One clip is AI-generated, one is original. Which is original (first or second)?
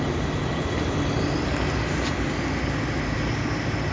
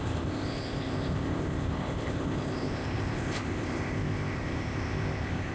first